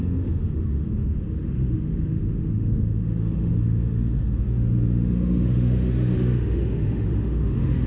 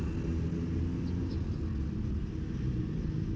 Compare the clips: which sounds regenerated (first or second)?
first